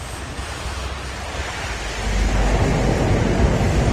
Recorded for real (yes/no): yes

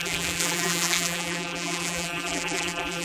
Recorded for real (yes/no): no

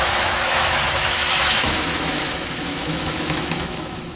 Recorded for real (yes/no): no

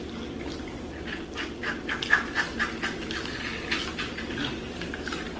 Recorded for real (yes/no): yes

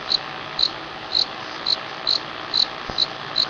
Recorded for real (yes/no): yes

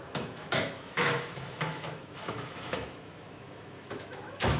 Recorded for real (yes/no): no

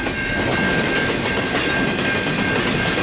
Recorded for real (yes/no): yes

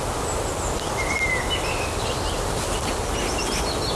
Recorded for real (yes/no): yes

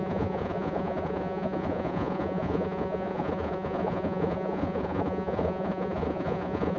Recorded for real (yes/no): no